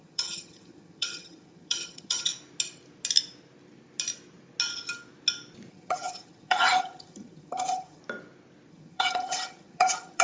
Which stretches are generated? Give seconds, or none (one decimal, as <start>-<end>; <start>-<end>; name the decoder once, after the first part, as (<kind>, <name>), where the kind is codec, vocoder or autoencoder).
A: 0.0-2.3 (vocoder, HiFi-GAN); 5.7-8.0; 8.7-10.2